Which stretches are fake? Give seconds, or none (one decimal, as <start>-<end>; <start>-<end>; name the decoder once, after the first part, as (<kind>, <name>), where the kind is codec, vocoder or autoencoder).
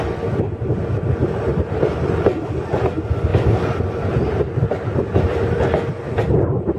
none